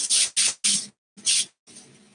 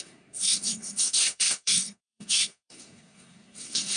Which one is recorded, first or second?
first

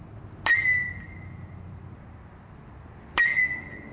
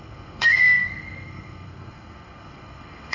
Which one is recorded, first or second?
first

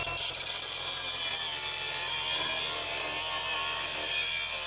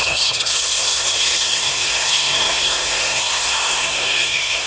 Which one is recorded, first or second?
first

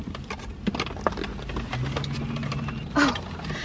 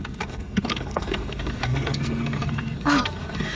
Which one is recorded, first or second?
first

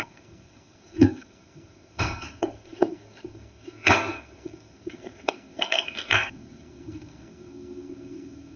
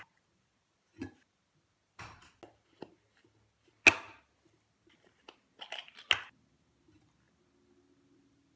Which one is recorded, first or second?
second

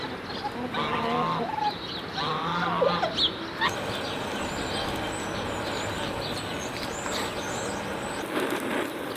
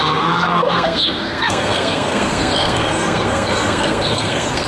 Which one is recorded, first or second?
first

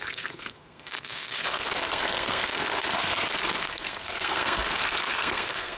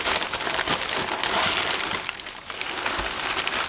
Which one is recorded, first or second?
second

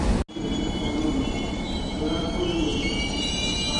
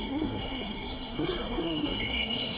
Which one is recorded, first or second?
first